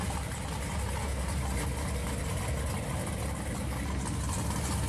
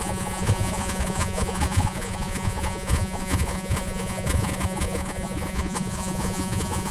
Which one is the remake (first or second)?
second